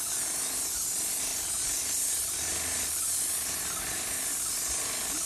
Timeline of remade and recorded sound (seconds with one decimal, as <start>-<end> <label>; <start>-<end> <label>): 0.0-5.3 recorded